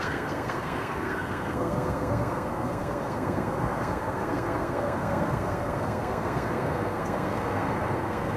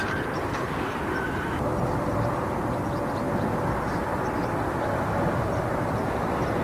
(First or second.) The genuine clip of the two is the second